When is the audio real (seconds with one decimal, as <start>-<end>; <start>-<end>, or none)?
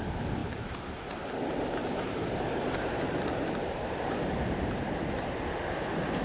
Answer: 0.0-0.4; 1.4-1.8; 4.8-6.2